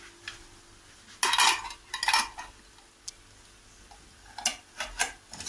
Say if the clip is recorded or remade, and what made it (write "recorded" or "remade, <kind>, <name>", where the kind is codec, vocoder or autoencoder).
recorded